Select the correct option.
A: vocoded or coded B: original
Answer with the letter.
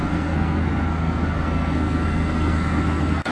A